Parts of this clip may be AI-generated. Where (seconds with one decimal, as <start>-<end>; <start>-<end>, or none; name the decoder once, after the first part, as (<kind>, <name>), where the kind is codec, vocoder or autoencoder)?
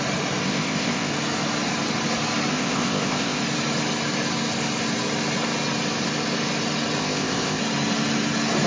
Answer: 0.4-1.1 (codec, ZipCodec); 2.5-3.4; 7.0-7.6